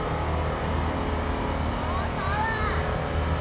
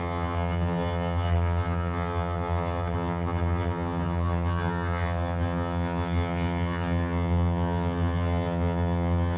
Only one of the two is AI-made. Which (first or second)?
second